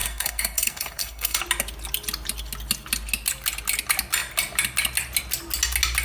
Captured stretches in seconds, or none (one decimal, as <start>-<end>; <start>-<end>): 1.4-6.0